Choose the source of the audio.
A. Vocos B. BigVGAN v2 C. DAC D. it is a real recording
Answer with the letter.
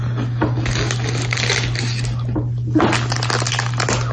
D